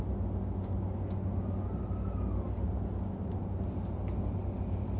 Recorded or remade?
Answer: recorded